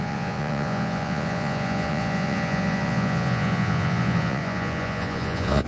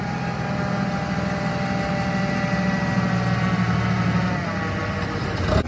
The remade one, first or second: first